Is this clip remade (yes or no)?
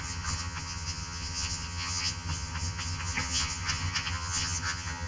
yes